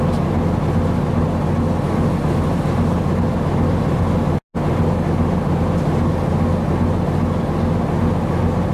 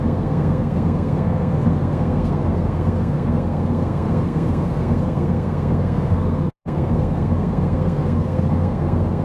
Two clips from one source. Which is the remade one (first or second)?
second